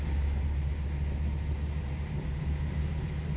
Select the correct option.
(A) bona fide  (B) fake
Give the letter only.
A